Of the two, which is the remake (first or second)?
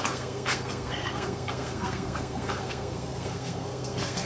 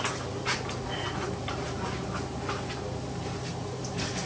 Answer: first